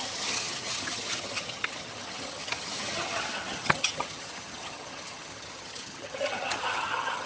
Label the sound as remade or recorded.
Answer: remade